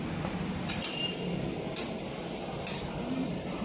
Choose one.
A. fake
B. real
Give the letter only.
A